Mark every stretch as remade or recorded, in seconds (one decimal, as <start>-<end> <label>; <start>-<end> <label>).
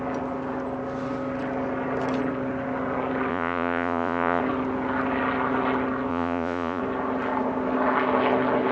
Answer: 0.0-3.3 recorded; 3.3-4.4 remade; 4.4-6.1 recorded; 6.1-6.8 remade; 6.8-8.7 recorded